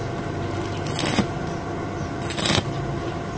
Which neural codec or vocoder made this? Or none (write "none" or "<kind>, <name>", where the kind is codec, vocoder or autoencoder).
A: none